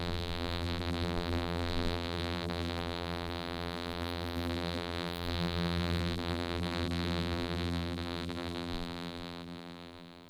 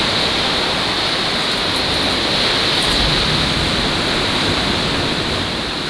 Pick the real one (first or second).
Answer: second